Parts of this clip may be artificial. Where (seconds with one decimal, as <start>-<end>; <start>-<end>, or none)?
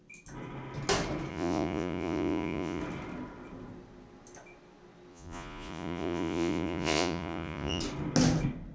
1.3-2.8; 5.1-7.8